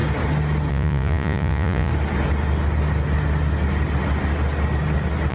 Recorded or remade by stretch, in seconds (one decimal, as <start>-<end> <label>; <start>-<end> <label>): 0.0-0.7 recorded; 0.7-1.9 remade; 1.9-5.3 recorded